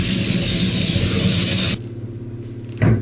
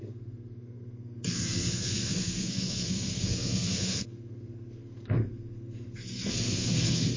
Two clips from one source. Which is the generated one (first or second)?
second